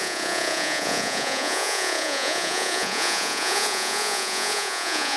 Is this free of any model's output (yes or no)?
no